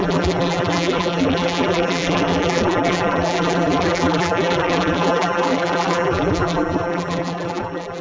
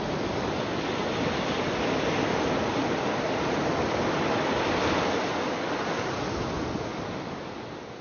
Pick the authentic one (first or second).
second